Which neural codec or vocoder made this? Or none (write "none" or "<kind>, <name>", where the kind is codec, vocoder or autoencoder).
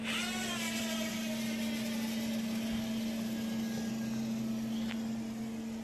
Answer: none